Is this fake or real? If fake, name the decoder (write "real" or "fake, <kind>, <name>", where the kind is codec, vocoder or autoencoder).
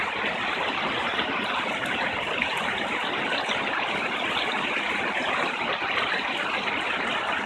real